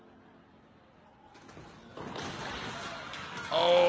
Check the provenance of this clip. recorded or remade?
recorded